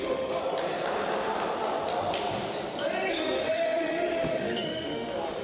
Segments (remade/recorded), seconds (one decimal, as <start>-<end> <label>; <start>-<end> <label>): 0.0-0.4 remade; 0.4-3.1 recorded; 3.1-5.4 remade